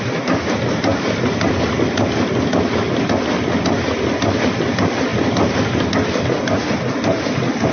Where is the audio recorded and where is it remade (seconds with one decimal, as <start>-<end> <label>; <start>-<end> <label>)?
0.0-7.7 recorded